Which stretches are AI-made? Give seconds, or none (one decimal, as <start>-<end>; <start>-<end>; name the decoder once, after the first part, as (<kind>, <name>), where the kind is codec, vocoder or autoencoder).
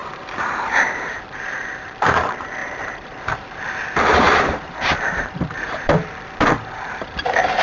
0.0-7.6 (vocoder, BigVGAN v2)